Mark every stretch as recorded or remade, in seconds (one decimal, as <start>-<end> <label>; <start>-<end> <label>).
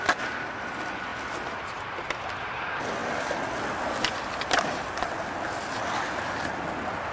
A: 0.0-7.1 recorded